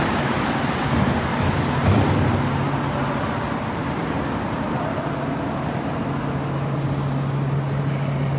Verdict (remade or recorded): recorded